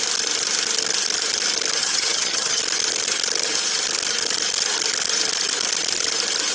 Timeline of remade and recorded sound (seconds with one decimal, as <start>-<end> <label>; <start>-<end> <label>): 0.0-1.8 recorded; 1.8-2.6 remade; 2.6-6.5 recorded